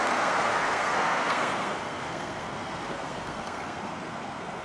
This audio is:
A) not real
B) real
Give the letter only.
A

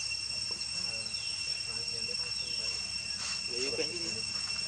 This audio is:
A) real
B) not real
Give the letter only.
A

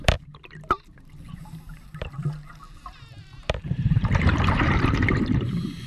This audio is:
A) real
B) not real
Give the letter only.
B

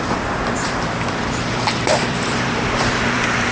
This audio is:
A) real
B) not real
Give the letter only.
B